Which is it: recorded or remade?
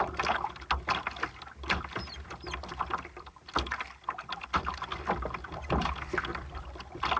recorded